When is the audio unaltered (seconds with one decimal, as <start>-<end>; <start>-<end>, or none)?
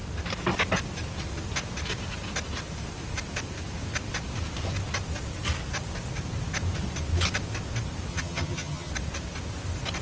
0.0-8.1; 8.9-10.0